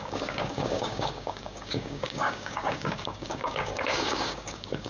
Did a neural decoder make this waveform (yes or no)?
yes